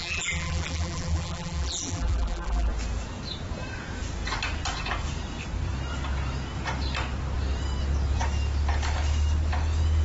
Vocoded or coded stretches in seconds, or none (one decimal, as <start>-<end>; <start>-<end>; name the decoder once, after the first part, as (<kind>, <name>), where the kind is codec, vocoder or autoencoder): 0.0-2.7 (vocoder, BigVGAN v2)

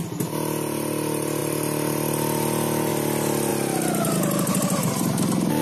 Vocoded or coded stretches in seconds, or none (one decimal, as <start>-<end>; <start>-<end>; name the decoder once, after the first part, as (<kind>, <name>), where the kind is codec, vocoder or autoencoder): none

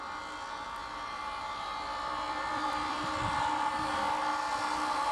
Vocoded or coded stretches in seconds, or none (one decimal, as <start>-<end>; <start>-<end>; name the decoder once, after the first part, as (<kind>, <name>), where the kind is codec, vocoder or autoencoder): 0.8-3.9 (vocoder, BigVGAN v2)

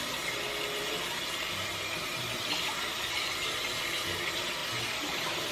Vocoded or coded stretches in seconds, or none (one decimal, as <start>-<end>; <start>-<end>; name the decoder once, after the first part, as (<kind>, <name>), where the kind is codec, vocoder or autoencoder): 0.5-3.8 (vocoder, BigVGAN v2); 4.6-5.5

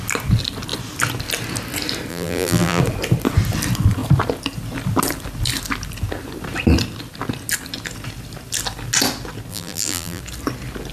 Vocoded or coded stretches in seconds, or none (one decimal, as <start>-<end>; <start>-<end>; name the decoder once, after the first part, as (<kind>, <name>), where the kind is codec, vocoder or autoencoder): 2.1-2.8 (vocoder, BigVGAN v2); 9.5-10.2

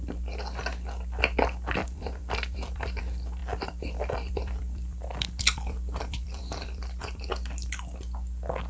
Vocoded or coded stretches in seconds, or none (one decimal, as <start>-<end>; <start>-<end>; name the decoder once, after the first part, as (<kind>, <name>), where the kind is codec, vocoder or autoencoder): 1.8-3.0 (vocoder, BigVGAN v2); 3.4-7.3

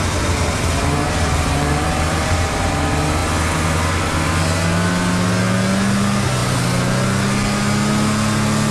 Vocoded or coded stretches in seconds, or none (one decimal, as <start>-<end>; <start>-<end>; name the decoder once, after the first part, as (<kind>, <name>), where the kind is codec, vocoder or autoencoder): 1.0-2.7 (vocoder, BigVGAN v2)